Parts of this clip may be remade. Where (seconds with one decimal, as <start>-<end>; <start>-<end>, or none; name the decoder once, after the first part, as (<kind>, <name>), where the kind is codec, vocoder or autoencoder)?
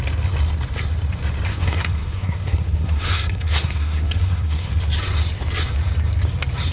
1.5-4.8 (codec, SNAC)